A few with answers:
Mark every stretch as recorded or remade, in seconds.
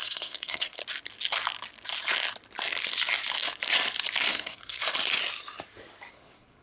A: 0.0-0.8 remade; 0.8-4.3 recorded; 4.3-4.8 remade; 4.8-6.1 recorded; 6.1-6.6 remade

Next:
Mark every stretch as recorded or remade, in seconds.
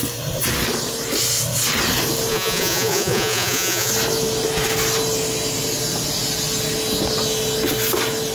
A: 0.0-2.3 recorded; 2.3-3.9 remade; 3.9-8.3 recorded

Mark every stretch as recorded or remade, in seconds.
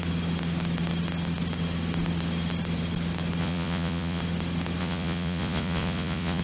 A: 0.0-3.4 recorded; 3.4-4.2 remade; 4.2-4.8 recorded; 4.8-6.4 remade